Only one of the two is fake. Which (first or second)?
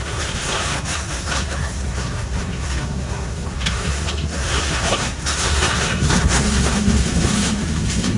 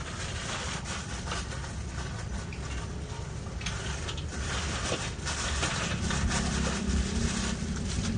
first